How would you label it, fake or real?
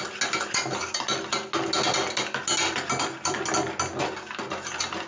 real